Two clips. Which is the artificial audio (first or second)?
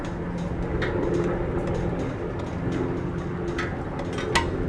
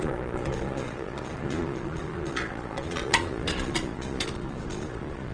second